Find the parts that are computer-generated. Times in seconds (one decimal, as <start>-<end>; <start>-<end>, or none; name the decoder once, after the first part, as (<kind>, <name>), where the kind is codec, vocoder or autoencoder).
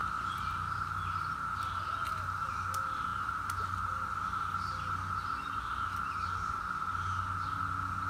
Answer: none